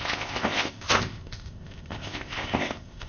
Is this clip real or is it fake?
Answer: fake